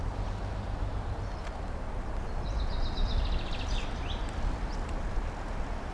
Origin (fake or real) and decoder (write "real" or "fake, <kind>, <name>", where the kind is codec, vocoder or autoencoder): real